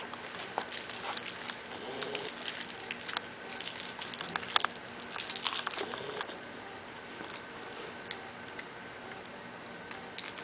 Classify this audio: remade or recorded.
recorded